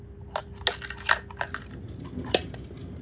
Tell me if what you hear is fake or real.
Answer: real